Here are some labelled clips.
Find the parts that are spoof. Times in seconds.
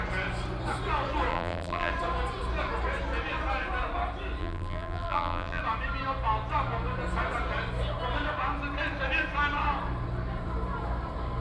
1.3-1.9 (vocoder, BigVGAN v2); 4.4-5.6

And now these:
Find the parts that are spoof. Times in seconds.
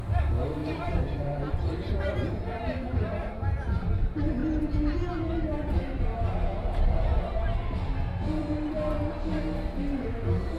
0.6-3.9 (vocoder, BigVGAN v2)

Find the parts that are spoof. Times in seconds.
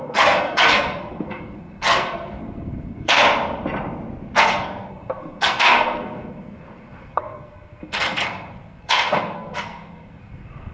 0.0-3.2 (codec, SNAC); 4.4-10.7